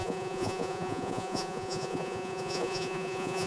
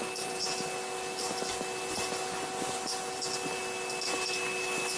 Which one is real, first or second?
second